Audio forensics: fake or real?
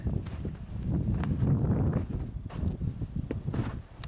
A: real